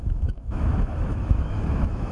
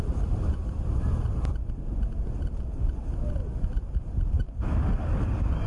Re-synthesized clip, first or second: first